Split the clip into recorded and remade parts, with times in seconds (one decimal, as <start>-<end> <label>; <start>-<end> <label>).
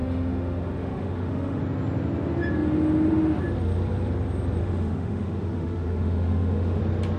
0.0-1.6 remade; 1.6-4.6 recorded; 4.6-6.8 remade; 6.8-7.2 recorded